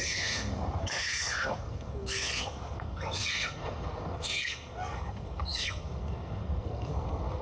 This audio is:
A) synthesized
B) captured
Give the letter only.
A